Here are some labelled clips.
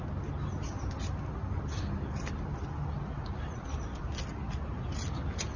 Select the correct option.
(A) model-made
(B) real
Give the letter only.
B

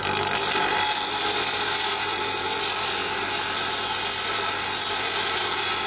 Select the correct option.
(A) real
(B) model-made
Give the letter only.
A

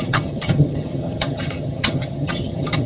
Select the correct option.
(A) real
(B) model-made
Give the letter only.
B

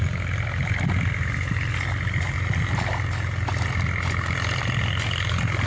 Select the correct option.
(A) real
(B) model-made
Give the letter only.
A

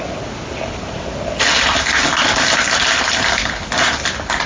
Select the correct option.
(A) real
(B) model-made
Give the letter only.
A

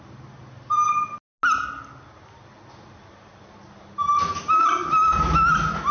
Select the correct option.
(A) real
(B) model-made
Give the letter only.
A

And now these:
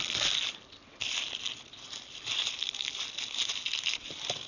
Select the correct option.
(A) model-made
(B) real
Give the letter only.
B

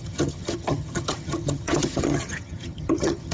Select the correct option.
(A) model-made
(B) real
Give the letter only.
A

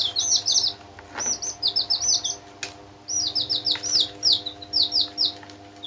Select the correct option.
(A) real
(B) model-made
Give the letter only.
A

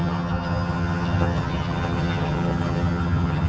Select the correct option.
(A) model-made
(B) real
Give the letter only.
A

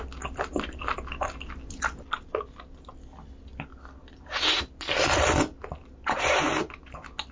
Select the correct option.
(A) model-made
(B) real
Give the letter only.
B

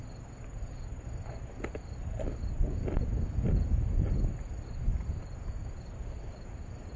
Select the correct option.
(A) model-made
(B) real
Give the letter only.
B